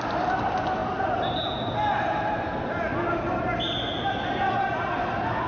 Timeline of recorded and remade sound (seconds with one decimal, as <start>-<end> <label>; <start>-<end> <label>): 0.0-5.5 recorded